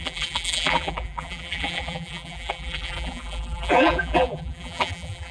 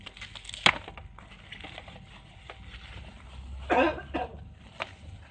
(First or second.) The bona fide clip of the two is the second